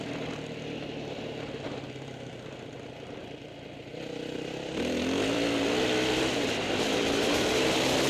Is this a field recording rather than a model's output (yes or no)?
no